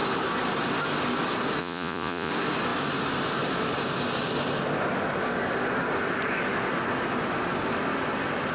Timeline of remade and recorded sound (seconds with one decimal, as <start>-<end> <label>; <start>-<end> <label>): 0.0-1.6 recorded; 1.6-2.3 remade; 2.3-8.5 recorded